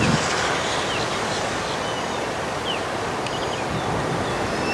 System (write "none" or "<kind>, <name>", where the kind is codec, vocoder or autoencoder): none